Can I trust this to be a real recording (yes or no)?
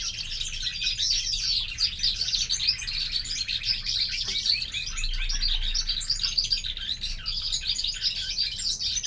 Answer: yes